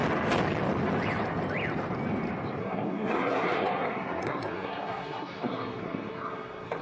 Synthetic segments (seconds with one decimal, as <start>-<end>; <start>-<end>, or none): 2.6-6.8